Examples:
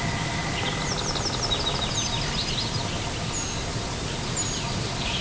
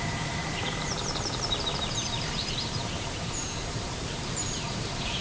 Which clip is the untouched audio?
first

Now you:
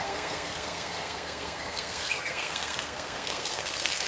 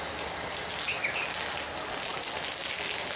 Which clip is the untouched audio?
second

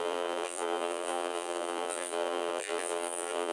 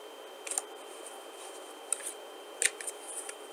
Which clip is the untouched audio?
second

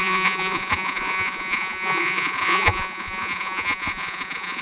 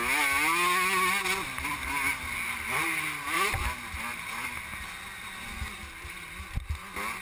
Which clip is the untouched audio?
second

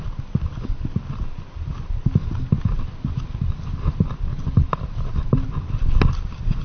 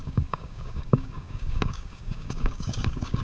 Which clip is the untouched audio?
first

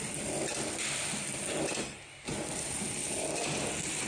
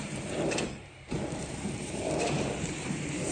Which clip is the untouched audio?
first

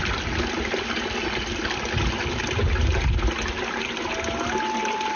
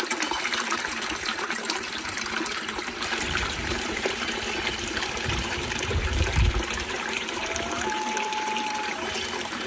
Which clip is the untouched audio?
first